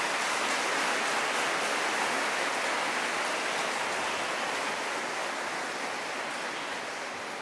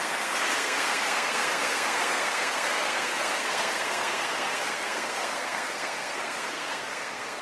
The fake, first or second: second